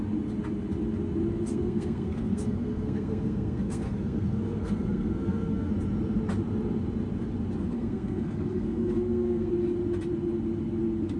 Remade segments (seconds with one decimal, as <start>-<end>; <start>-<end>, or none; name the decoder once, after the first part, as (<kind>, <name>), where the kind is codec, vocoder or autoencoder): 1.5-5.7 (codec, SNAC); 7.6-9.5